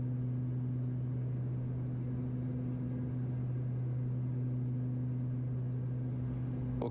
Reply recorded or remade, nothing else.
recorded